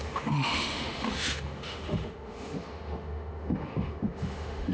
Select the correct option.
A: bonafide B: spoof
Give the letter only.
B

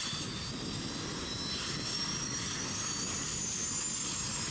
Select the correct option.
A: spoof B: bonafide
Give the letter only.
B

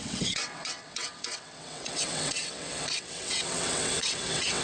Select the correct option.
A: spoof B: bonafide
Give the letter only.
A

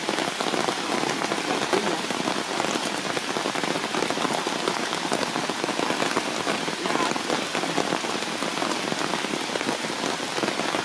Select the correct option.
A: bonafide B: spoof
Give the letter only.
A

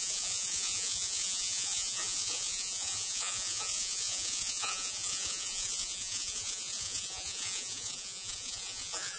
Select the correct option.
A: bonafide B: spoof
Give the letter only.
B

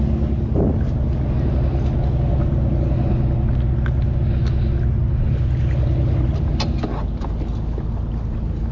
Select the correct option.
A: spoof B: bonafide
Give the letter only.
B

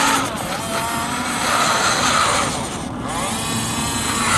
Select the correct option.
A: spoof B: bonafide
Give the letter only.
B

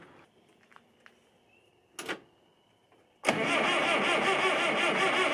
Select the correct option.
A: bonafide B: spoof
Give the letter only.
A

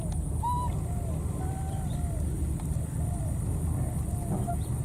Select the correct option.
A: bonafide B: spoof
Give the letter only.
A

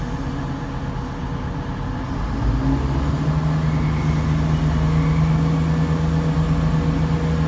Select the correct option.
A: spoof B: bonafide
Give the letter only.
B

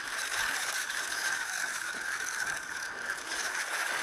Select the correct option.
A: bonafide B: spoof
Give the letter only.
B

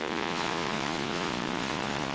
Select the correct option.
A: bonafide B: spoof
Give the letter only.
B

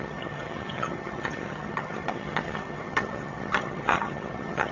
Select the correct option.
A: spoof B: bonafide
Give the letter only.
A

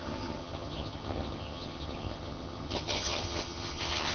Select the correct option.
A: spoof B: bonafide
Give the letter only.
A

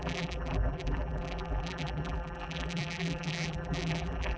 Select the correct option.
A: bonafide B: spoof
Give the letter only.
B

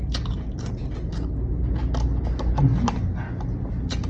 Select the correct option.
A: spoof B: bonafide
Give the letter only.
B